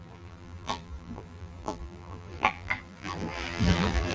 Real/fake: fake